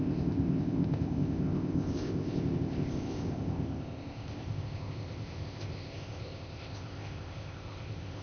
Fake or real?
fake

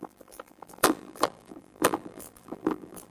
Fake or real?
fake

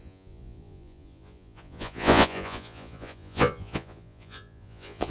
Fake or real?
fake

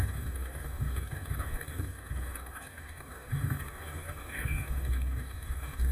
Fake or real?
fake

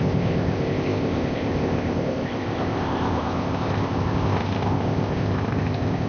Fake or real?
fake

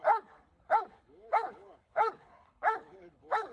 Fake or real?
fake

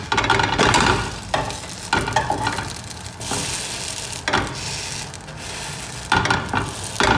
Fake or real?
real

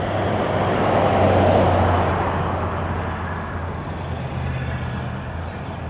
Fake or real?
real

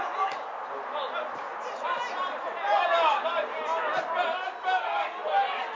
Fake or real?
real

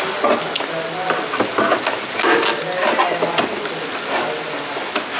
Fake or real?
real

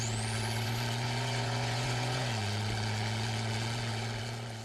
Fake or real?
fake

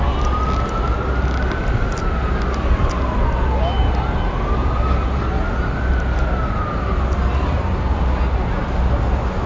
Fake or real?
real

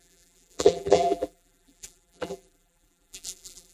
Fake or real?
fake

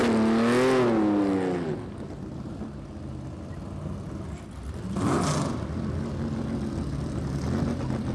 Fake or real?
real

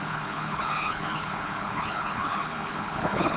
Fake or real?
fake